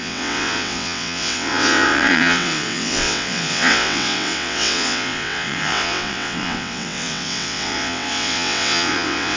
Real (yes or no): no